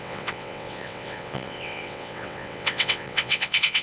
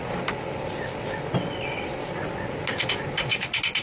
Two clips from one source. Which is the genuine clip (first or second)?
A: second